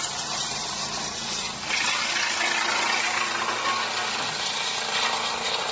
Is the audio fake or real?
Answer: real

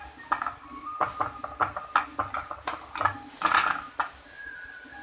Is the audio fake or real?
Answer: real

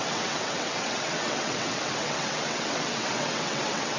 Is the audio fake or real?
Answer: fake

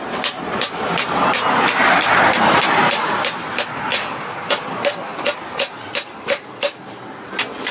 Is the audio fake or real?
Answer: fake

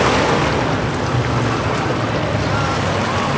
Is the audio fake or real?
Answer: real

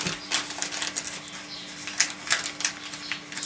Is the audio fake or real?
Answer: real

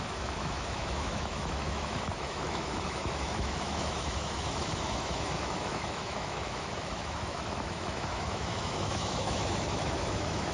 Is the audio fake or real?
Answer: fake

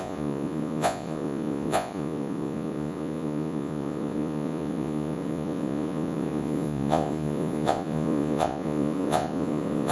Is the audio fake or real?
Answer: fake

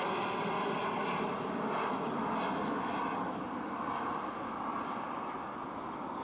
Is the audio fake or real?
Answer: real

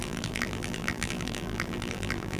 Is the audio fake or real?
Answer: fake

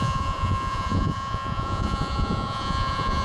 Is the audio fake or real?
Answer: fake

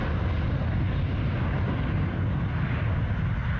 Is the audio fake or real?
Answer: real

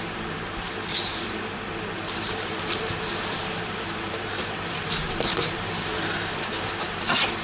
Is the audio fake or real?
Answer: fake